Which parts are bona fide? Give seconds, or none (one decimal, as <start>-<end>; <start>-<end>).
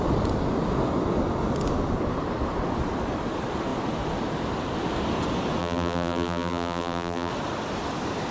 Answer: 0.0-5.6; 7.3-8.3